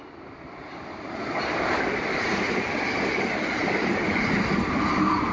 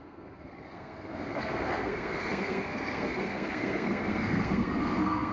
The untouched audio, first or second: first